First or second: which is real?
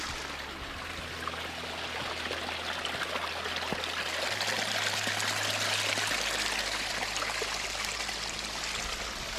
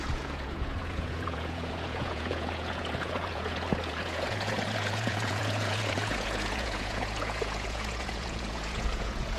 first